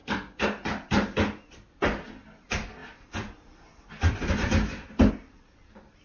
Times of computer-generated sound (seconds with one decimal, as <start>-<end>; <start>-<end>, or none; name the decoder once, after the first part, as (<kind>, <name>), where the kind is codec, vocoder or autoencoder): 2.8-5.1 (vocoder, BigVGAN v2)